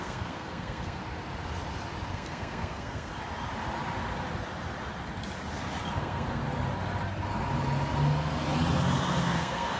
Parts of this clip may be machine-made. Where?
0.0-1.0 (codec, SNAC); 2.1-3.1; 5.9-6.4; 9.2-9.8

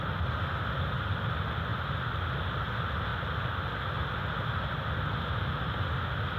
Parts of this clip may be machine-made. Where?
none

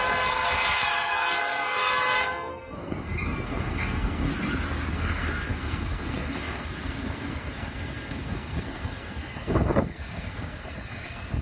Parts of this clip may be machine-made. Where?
0.0-4.3 (codec, SNAC); 4.9-11.4